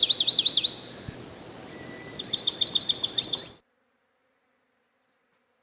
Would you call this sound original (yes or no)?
yes